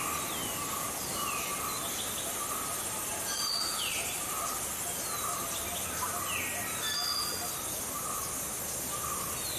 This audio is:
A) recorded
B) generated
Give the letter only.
A